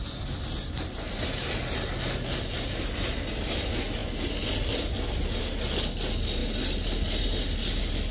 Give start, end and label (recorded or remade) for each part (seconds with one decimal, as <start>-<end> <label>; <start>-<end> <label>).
0.0-8.1 recorded

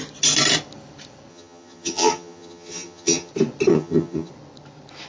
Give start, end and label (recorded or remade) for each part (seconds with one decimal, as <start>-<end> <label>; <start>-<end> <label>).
0.0-1.3 recorded; 1.3-3.3 remade; 3.3-3.7 recorded; 3.7-4.3 remade; 4.3-5.1 recorded

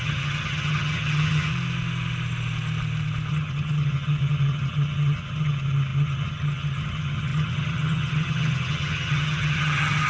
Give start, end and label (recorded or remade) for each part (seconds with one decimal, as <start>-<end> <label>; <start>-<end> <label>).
0.0-1.5 remade; 1.5-3.3 recorded; 3.3-10.1 remade